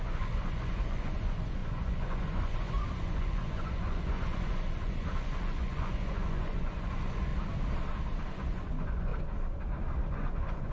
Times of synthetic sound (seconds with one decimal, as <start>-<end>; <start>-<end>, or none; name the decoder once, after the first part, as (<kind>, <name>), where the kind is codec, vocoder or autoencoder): 0.0-7.3 (vocoder, Vocos); 8.3-9.1; 10.1-10.7

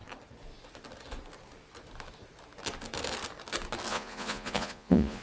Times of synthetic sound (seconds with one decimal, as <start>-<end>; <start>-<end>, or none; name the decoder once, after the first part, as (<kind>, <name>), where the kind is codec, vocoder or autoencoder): 3.9-5.2 (vocoder, Vocos)

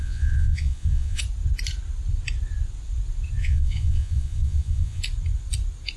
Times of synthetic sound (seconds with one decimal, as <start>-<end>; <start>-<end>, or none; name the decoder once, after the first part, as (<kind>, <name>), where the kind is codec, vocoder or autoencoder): 0.0-1.2 (vocoder, Vocos); 3.4-5.0

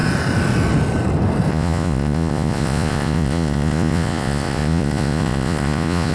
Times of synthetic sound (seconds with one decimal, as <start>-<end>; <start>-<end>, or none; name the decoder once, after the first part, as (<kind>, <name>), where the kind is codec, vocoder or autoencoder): 1.5-6.1 (vocoder, Vocos)

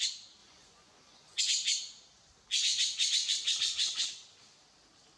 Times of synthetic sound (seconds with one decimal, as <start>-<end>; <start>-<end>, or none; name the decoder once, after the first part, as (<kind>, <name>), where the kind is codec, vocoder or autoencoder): 0.4-1.4 (vocoder, Vocos); 2.7-3.3

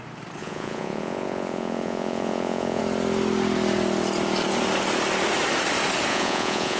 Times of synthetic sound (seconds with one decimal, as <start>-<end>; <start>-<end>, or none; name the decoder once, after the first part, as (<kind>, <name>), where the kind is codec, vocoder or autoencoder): 0.4-2.8 (vocoder, Vocos); 6.1-6.8